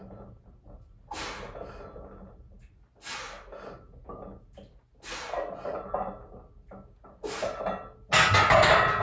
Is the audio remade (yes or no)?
no